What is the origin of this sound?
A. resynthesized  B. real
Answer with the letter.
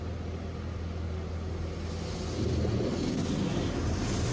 B